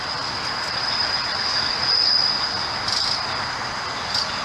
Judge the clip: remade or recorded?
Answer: recorded